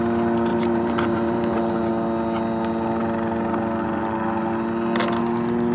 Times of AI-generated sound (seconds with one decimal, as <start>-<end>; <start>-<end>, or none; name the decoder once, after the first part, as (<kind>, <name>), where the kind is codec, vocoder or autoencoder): 0.5-1.9 (vocoder, BigVGAN v2)